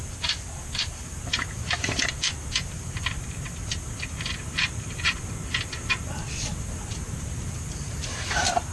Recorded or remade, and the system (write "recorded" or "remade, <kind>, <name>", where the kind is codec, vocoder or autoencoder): remade, vocoder, BigVGAN v2